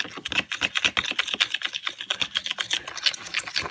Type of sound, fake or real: real